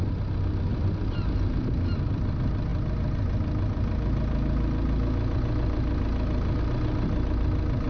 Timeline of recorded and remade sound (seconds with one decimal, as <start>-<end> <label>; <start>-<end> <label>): 0.0-7.9 recorded